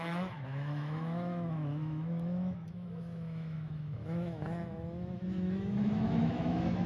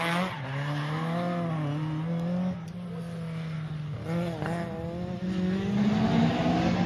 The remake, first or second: first